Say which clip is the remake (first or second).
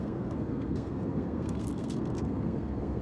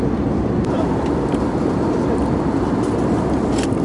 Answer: first